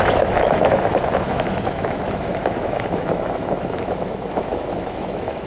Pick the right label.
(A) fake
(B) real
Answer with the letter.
A